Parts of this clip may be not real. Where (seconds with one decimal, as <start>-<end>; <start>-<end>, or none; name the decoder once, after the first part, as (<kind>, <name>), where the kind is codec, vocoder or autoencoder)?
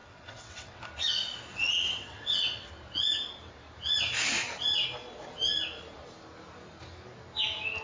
0.0-0.8 (vocoder, WaveNeXt); 1.5-2.7